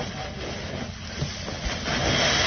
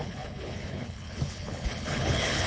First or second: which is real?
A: first